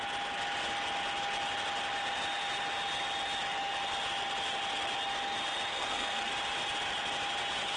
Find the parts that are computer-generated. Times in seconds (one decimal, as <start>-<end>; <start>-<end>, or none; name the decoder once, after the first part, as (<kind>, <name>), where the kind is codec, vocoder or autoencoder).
5.7-6.3 (codec, SNAC)